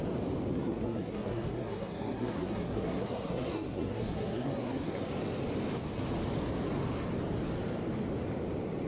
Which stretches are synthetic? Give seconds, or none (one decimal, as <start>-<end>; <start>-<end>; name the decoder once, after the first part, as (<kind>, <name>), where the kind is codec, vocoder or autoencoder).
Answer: 0.5-5.1 (codec, SNAC)